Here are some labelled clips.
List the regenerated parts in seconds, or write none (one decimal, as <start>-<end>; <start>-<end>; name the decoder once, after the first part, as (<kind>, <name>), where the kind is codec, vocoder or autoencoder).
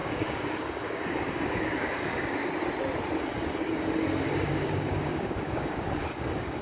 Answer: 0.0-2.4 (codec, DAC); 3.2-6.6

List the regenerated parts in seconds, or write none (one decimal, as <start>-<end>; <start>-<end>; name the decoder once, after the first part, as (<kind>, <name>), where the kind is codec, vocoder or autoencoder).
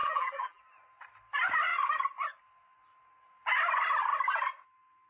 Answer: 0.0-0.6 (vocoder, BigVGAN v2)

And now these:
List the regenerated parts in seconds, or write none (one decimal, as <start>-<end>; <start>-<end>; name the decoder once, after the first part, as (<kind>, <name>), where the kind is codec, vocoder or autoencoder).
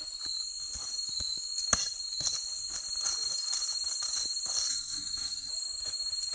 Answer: 4.7-5.5 (codec, DAC)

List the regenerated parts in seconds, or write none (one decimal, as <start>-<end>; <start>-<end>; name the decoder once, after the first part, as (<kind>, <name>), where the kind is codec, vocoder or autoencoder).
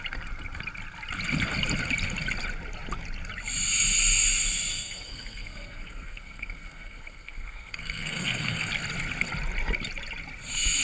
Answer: 4.7-8.7 (codec, SNAC)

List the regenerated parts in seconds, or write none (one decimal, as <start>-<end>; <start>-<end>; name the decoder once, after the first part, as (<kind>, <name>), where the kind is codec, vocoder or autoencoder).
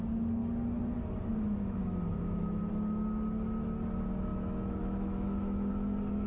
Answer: 0.4-2.7 (autoencoder, DAC-VAE); 4.3-5.7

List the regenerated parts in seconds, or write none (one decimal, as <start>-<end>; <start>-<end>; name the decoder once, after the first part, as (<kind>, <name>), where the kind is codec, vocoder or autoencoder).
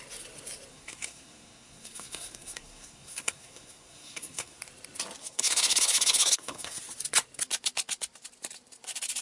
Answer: 0.7-4.6 (codec, SNAC); 5.2-6.8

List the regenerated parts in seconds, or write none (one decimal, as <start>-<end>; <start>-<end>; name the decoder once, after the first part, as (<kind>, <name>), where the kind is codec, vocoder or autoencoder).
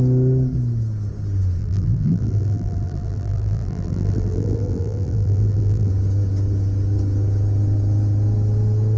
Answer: 1.6-5.9 (vocoder, BigVGAN v2)